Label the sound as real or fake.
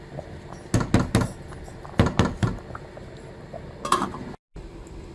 real